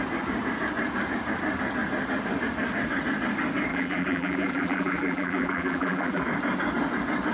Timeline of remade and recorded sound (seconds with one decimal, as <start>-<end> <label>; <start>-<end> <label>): 0.0-3.7 recorded; 3.7-6.2 remade; 6.2-7.3 recorded